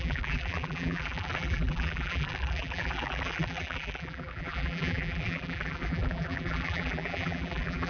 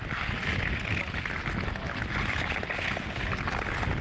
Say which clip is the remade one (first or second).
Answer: first